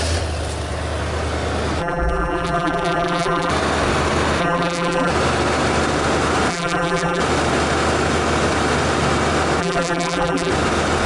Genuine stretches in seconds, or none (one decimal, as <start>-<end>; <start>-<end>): 0.0-1.8; 3.5-4.4; 5.1-6.5; 7.2-9.6; 10.5-11.1